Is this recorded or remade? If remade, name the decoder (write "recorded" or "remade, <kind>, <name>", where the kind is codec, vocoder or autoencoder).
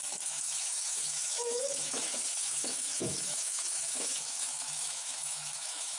remade, autoencoder, DAC-VAE